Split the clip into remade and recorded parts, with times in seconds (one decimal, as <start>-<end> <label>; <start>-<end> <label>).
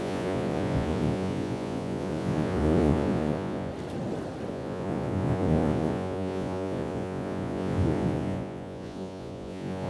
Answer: 0.0-3.7 remade; 3.7-4.5 recorded; 4.5-9.9 remade